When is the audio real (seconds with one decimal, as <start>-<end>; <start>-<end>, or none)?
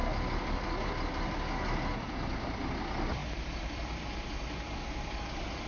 0.0-5.7